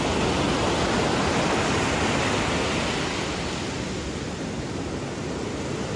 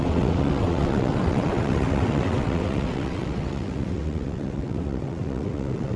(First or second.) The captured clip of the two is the first